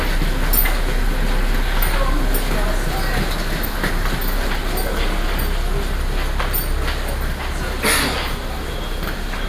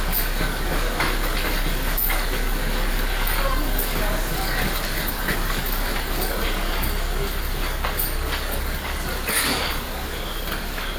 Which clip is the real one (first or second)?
first